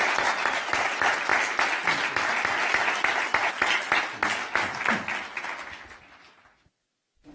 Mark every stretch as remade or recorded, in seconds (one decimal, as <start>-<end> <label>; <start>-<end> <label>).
0.0-7.3 recorded